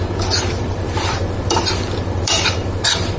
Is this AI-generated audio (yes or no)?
yes